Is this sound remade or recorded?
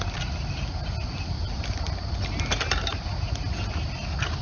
recorded